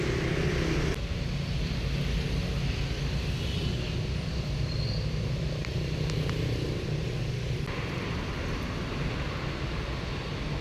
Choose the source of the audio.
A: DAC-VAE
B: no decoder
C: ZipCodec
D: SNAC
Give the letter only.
B